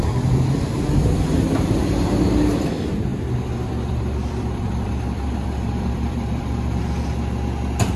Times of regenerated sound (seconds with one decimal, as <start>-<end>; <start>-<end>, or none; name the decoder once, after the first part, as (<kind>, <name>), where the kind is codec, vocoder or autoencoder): 3.1-6.8 (vocoder, BigVGAN v2)